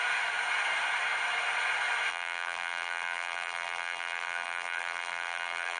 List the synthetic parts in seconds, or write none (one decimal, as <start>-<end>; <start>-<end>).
2.1-5.8